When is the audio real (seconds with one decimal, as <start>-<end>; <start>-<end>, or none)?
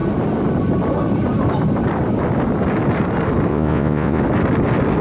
0.0-3.5; 4.2-5.0